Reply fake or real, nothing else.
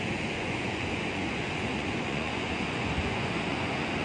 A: fake